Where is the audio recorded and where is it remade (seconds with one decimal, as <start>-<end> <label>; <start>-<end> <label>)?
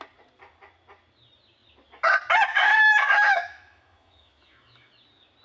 0.0-2.5 recorded; 2.5-4.9 remade; 4.9-5.4 recorded